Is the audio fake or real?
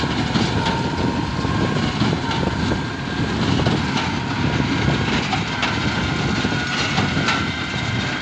real